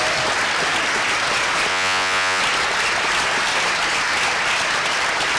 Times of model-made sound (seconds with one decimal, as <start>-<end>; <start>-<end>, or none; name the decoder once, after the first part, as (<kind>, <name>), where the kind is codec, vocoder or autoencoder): 1.7-2.4 (vocoder, Vocos)